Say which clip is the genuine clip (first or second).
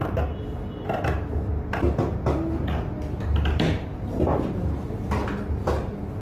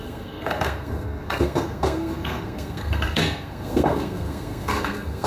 first